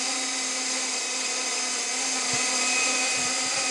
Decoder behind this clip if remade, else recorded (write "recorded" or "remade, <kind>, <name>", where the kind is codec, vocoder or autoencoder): recorded